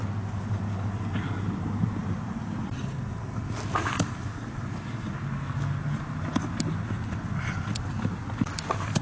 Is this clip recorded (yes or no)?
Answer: yes